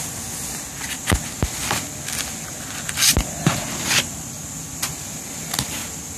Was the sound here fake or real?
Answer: real